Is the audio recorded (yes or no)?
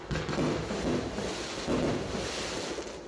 yes